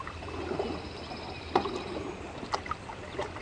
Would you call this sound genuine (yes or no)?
yes